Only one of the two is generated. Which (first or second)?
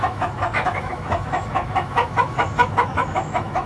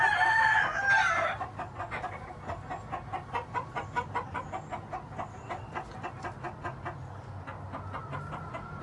first